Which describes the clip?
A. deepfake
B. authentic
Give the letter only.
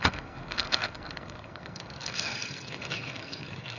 A